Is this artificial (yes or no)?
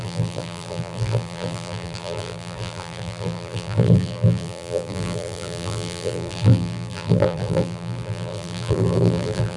yes